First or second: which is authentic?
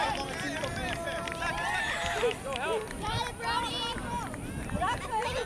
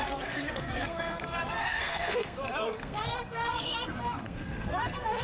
first